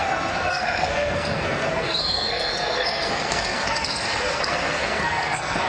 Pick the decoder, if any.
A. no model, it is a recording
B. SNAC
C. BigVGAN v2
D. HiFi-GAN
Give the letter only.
B